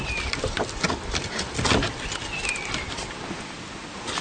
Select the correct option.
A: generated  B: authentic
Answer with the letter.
B